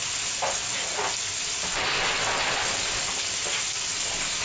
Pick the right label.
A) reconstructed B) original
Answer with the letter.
B